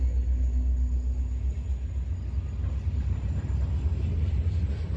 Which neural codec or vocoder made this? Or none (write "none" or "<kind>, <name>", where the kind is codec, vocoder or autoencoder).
none